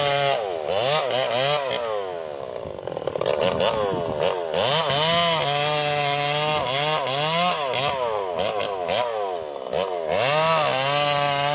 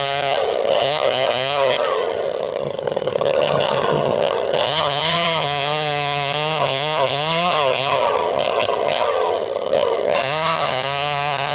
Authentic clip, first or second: first